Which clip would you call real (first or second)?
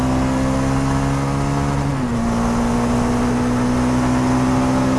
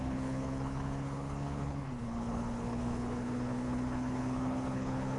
first